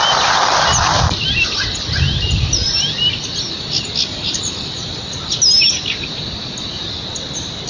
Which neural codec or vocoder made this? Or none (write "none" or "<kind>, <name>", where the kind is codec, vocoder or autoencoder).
none